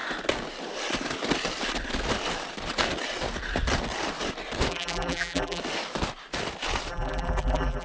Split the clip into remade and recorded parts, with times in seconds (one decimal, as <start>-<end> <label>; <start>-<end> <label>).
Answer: 0.0-4.7 recorded; 4.7-5.6 remade; 5.6-6.9 recorded; 6.9-7.8 remade

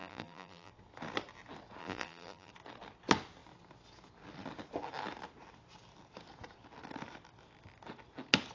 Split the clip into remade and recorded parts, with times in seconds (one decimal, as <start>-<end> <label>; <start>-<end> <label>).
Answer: 0.0-0.7 remade; 0.7-1.8 recorded; 1.8-2.5 remade; 2.5-8.5 recorded

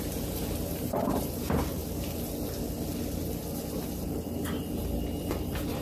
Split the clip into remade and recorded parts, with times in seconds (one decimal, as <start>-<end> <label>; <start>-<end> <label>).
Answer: 0.0-1.8 remade; 1.8-5.3 recorded; 5.3-5.8 remade

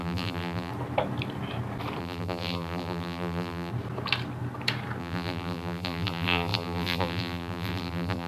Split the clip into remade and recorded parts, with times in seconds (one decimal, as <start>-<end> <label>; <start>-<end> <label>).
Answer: 0.0-0.7 remade; 0.7-2.0 recorded; 2.0-3.7 remade; 3.7-5.0 recorded; 5.0-8.3 remade

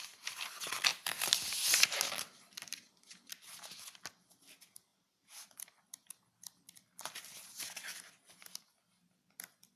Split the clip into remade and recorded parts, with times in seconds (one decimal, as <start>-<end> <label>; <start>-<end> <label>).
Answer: 0.0-4.9 recorded; 4.9-5.6 remade; 5.6-9.8 recorded

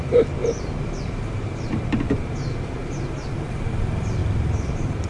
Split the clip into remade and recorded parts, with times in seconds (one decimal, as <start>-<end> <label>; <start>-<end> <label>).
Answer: 0.0-5.1 remade